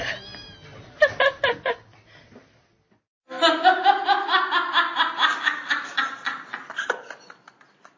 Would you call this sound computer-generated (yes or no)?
no